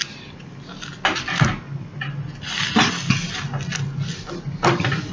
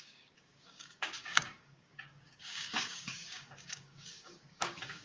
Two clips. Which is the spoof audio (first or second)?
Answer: second